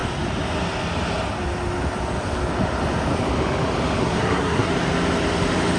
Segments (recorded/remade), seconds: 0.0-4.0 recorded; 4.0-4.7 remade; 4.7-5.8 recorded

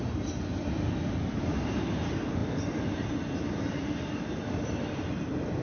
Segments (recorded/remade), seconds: 0.0-5.6 recorded

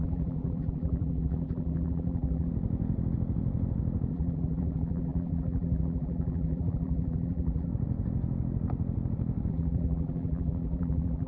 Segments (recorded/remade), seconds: 0.0-2.5 remade; 2.5-4.1 recorded; 4.1-7.7 remade; 7.7-9.5 recorded; 9.5-11.3 remade